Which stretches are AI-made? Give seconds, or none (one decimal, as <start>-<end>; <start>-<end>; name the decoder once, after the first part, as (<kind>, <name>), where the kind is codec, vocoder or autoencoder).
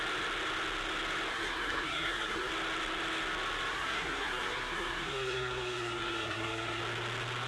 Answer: 1.3-2.5 (codec, SNAC); 3.7-6.8